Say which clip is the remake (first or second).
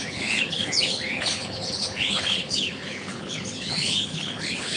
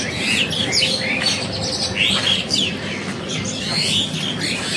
first